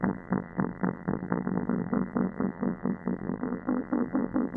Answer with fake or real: fake